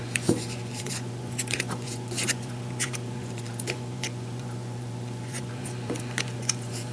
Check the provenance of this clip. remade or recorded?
remade